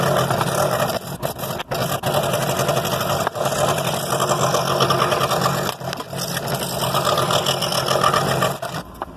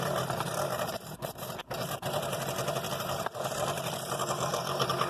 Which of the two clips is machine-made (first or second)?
second